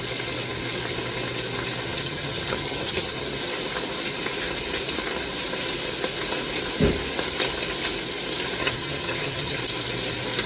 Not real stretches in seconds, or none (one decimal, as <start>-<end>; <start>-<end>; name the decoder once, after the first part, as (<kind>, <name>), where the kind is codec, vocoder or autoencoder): 1.9-3.4 (vocoder, HiFi-GAN); 8.6-9.6